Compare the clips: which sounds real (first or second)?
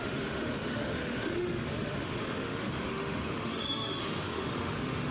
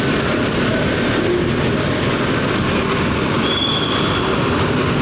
second